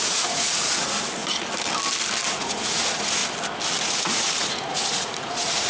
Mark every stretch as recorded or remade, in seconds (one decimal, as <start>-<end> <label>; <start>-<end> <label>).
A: 0.0-1.2 remade; 1.2-2.3 recorded; 2.3-3.2 remade; 3.2-3.8 recorded; 3.8-5.7 remade